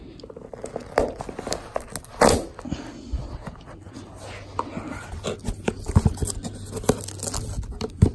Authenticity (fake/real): real